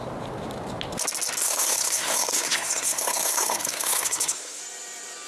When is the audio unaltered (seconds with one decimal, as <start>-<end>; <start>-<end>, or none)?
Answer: 0.0-1.4; 4.6-5.3